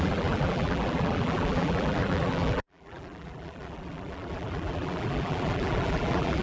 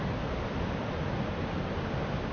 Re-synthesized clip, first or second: first